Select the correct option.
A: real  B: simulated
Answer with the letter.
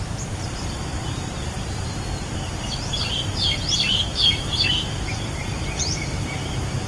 B